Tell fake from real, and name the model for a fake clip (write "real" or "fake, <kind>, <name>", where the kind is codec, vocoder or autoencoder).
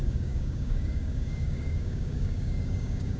fake, codec, DAC